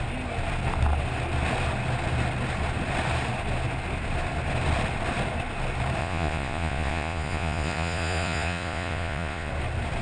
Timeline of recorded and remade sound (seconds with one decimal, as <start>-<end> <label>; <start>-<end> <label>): 0.0-6.0 recorded; 6.0-9.5 remade; 9.5-10.0 recorded